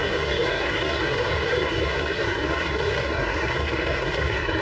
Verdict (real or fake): fake